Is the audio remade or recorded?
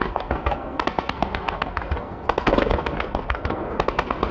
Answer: remade